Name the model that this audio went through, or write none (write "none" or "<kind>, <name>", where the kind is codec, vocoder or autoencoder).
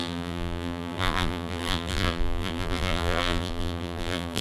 vocoder, BigVGAN v2